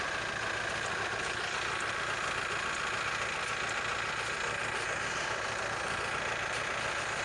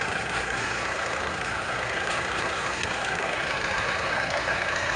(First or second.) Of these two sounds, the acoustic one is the first